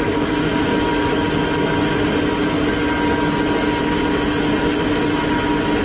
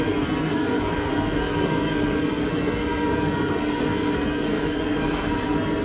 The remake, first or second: second